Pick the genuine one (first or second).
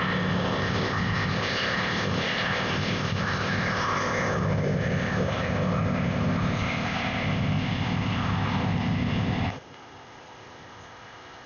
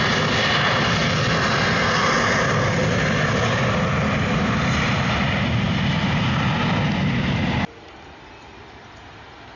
second